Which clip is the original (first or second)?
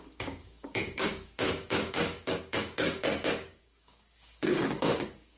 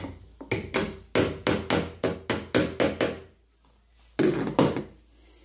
second